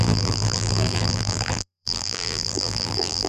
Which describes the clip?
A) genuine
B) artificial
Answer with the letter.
B